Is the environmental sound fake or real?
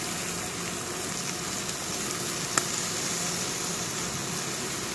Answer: real